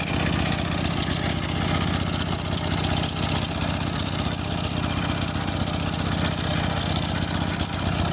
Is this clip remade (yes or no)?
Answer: no